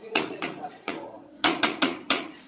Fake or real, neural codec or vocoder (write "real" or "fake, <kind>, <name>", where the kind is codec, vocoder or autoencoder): fake, vocoder, Vocos